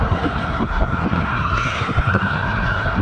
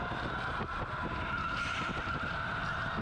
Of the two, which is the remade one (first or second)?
first